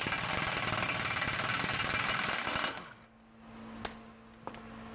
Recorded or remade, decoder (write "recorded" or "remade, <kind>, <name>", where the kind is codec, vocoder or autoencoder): recorded